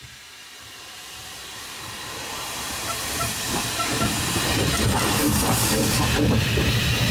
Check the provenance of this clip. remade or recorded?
remade